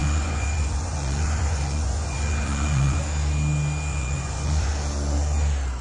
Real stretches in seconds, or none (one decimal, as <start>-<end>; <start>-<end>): 3.0-3.9; 4.7-5.8